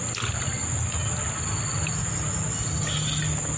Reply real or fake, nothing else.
real